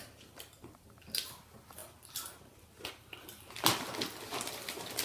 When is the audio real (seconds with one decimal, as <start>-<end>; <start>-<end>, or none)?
0.0-5.0